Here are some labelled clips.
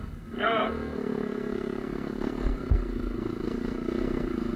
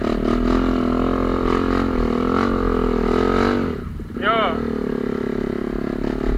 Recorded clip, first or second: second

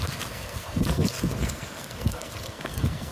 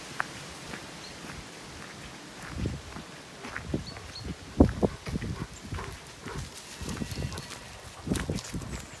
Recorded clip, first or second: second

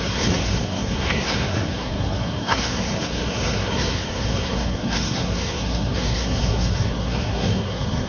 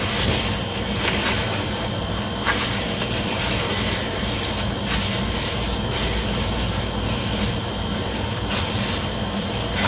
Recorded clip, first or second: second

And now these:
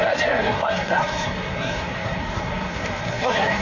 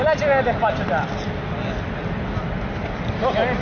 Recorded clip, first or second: second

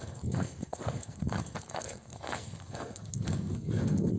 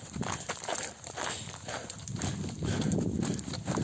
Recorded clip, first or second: second